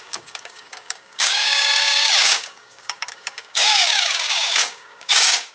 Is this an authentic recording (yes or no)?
no